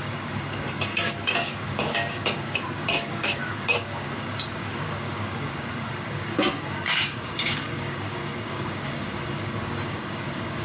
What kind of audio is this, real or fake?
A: fake